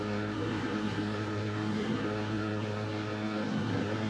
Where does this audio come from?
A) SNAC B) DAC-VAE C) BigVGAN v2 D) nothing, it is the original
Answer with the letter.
A